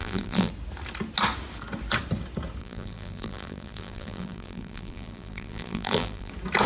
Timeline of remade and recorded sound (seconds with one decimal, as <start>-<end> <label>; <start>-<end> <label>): 0.0-0.5 remade; 0.5-2.6 recorded; 2.6-6.3 remade; 6.3-6.7 recorded